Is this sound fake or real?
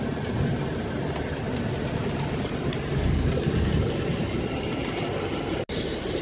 real